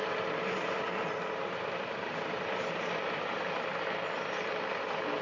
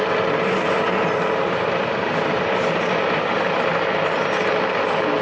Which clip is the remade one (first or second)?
first